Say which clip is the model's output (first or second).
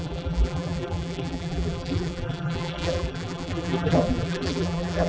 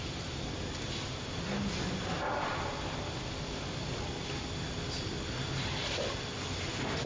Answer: first